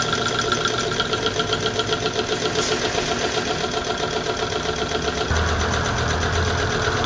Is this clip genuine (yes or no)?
yes